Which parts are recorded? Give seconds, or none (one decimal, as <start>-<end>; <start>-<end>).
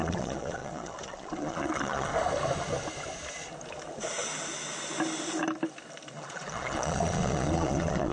2.1-6.1